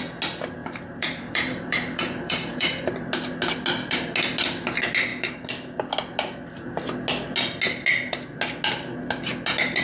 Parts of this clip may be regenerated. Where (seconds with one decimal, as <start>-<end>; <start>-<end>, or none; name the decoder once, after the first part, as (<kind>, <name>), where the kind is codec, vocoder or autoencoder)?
0.6-2.9 (vocoder, BigVGAN v2)